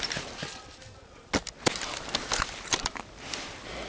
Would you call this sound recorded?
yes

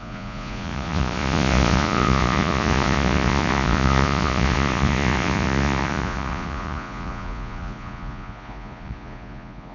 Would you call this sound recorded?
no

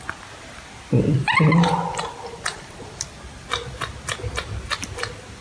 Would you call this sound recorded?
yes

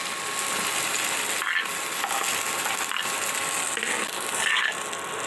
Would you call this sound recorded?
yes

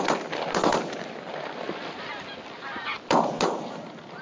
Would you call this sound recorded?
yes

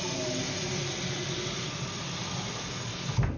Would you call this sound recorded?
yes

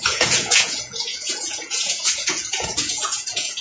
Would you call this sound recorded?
no